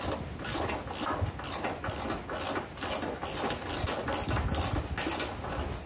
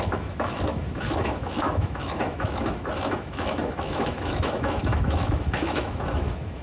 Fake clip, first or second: second